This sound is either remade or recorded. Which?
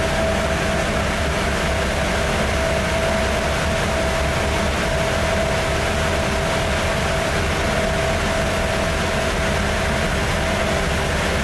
recorded